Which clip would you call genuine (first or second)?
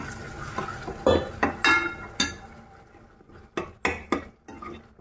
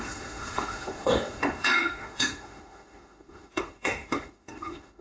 first